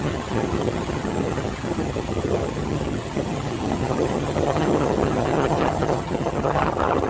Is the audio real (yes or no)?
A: no